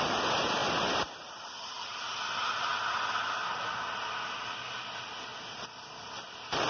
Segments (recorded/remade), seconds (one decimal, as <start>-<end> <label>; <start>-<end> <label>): 0.0-0.6 recorded; 0.6-1.3 remade; 1.3-6.7 recorded